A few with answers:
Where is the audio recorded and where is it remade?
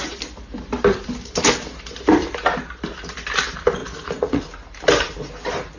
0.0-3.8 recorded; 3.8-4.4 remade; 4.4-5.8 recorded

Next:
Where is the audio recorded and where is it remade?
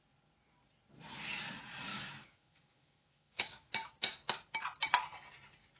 0.0-1.9 recorded; 1.9-3.7 remade; 3.7-5.8 recorded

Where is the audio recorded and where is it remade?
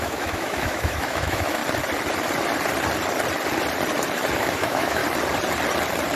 0.0-1.6 remade; 1.6-4.4 recorded; 4.4-5.0 remade; 5.0-6.2 recorded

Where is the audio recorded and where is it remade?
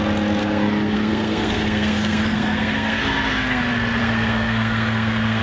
0.0-0.4 recorded; 0.4-3.6 remade; 3.6-4.0 recorded; 4.0-5.4 remade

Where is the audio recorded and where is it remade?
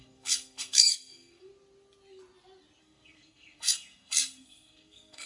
0.0-1.5 remade; 1.5-2.8 recorded; 2.8-5.3 remade